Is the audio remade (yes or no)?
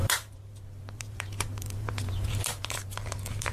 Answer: yes